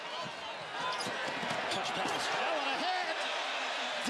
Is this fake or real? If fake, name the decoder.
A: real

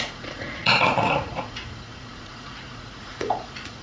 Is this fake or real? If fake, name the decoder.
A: fake, vocoder, Vocos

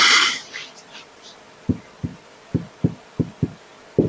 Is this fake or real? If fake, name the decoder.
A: fake, vocoder, BigVGAN v2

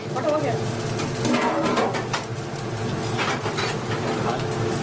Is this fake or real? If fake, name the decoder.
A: real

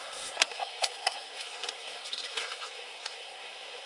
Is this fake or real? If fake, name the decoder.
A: fake, codec, SNAC